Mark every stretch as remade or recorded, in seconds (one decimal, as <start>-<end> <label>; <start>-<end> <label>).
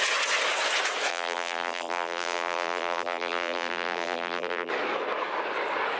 0.0-1.1 recorded; 1.1-4.7 remade; 4.7-6.0 recorded